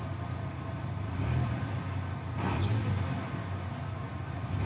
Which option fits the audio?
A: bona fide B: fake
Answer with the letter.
A